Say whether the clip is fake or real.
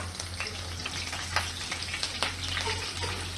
real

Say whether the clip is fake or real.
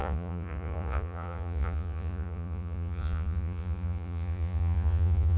fake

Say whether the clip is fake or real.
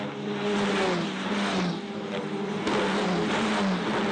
real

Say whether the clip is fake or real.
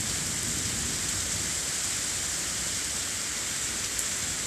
fake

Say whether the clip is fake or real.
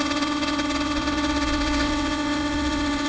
fake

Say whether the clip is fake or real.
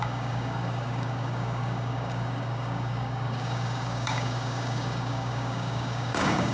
fake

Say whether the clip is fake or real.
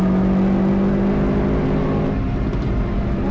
real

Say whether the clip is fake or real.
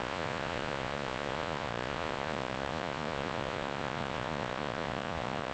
fake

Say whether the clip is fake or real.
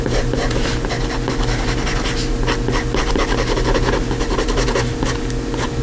real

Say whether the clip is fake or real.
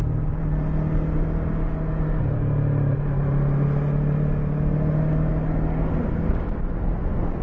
real